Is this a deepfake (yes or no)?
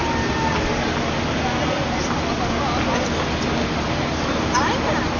no